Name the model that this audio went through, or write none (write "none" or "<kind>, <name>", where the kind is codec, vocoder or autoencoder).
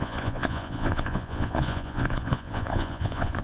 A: vocoder, Vocos